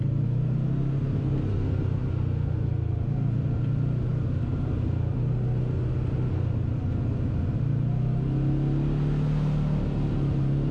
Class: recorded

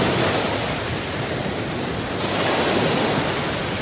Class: recorded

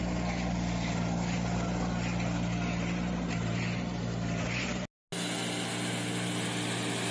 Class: recorded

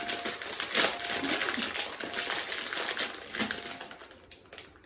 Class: recorded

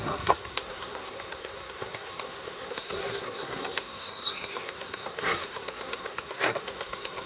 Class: remade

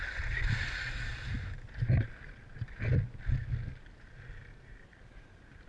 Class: recorded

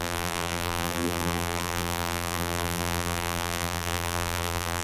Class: remade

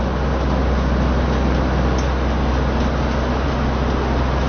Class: recorded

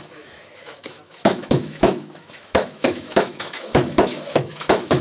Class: remade